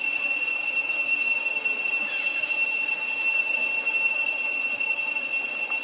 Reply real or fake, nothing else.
real